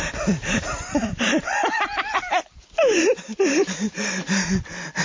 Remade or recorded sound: remade